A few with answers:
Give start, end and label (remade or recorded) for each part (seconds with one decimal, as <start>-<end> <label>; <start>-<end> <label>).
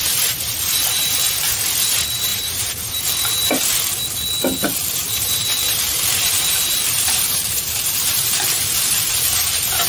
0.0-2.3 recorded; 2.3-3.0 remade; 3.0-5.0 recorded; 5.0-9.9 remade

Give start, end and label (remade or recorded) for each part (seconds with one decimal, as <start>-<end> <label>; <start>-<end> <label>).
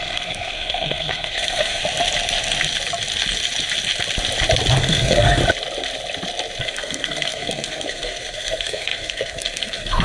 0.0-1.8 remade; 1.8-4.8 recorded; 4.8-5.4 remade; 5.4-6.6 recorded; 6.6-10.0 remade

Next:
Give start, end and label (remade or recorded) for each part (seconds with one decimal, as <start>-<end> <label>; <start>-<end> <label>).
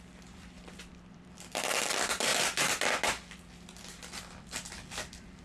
0.0-2.3 remade; 2.3-4.2 recorded; 4.2-5.4 remade